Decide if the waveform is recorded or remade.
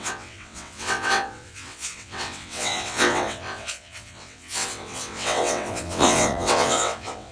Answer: remade